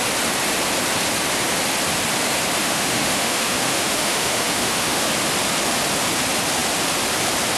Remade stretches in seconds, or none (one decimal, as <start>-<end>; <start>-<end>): 2.6-5.1